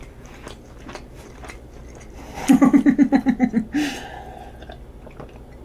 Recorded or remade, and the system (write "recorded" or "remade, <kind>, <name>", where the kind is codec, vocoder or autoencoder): recorded